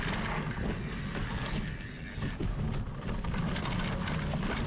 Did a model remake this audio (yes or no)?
no